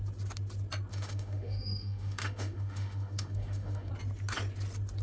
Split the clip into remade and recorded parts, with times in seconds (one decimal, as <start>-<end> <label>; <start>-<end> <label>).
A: 0.0-0.9 recorded; 0.9-3.9 remade; 3.9-5.0 recorded